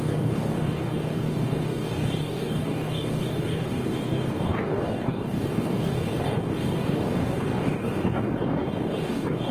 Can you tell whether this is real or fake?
fake